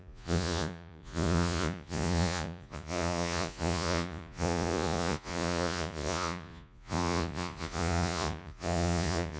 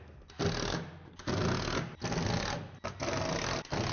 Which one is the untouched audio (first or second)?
second